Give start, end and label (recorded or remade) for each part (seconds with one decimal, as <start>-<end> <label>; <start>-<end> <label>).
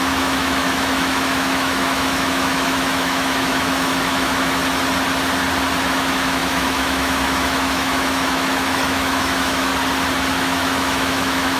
0.0-4.6 remade; 4.6-5.8 recorded; 5.8-9.7 remade; 9.7-10.3 recorded; 10.3-11.6 remade